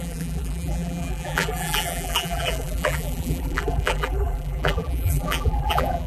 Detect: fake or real fake